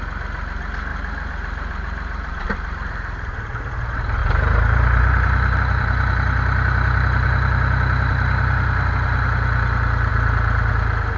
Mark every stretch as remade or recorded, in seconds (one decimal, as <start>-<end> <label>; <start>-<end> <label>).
0.0-0.9 recorded; 0.9-3.7 remade; 3.7-4.2 recorded; 4.2-8.9 remade; 8.9-11.2 recorded